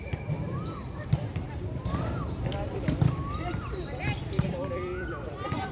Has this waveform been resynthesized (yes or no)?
yes